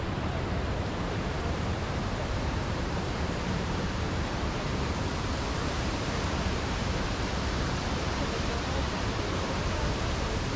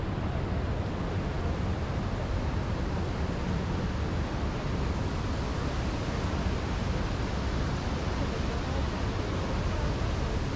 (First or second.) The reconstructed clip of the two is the first